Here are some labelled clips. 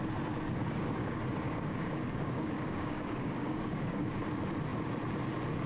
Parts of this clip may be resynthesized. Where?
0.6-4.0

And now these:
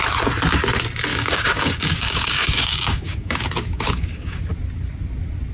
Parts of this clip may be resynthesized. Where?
1.1-4.4

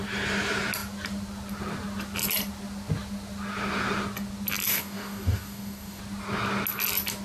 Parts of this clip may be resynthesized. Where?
4.7-6.0

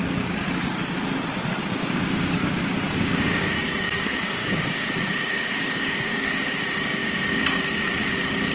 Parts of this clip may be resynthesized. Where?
1.6-6.6; 7.0-7.6

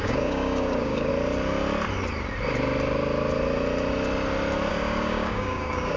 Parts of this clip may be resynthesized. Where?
0.0-1.1; 4.7-6.0